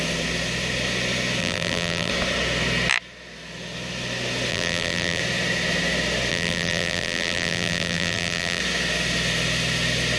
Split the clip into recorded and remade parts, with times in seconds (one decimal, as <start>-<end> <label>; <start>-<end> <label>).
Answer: 0.0-1.4 recorded; 1.4-2.1 remade; 2.1-4.5 recorded; 4.5-5.2 remade; 5.2-6.3 recorded; 6.3-8.6 remade; 8.6-10.2 recorded

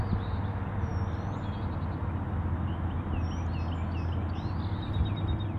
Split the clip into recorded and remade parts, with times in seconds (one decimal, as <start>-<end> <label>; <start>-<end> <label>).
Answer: 0.0-5.6 recorded

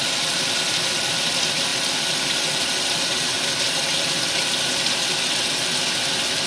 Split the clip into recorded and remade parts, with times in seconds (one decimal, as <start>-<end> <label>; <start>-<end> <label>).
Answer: 0.0-6.5 recorded

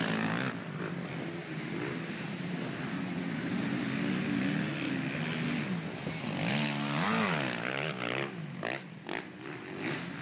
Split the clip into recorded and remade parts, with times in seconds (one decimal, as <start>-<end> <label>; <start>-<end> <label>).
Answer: 0.0-10.2 recorded